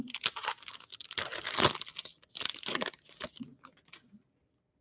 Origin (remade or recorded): recorded